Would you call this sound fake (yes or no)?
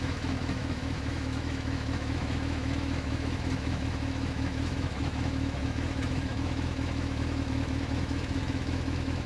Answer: yes